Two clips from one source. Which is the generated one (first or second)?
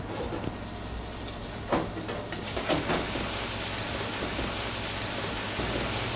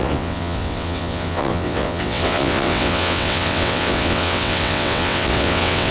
second